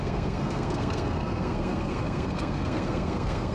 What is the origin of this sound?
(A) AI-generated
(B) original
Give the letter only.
A